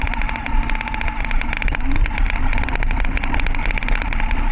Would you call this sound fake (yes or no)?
no